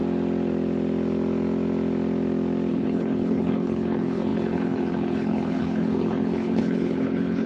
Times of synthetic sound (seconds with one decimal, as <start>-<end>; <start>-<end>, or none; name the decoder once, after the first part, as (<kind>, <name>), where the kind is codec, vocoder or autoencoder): 2.7-7.5 (codec, HILCodec)